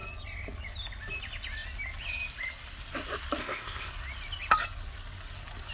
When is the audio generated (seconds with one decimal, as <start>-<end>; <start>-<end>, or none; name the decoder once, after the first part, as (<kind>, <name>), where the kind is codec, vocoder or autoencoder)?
3.4-3.9 (codec, ZipCodec)